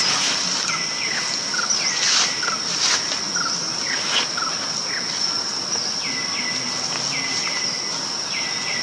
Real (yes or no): yes